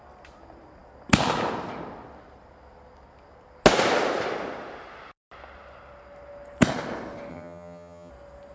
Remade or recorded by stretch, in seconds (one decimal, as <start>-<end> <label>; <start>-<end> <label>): 0.0-7.3 recorded; 7.3-8.1 remade; 8.1-8.5 recorded